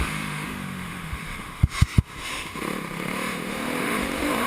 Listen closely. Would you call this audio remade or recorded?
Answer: remade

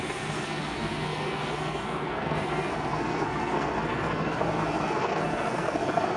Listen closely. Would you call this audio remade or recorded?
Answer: remade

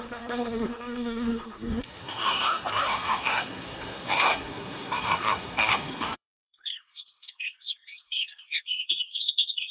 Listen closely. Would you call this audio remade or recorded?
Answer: remade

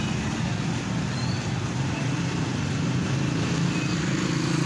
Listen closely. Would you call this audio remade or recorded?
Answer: recorded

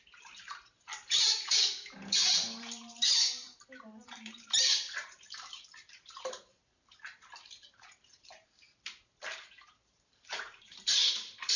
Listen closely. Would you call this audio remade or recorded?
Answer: remade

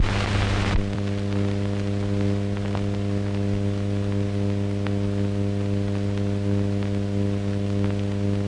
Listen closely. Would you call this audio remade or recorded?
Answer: recorded